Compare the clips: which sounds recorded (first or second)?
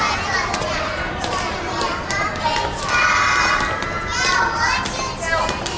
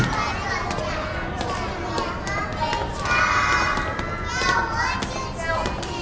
second